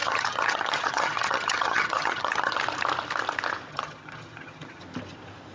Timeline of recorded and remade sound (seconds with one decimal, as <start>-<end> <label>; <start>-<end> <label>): 0.0-2.6 remade; 2.6-3.7 recorded; 3.7-4.8 remade; 4.8-5.5 recorded